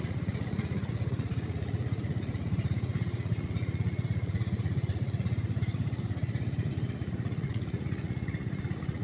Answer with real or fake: fake